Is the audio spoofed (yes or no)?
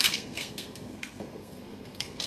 yes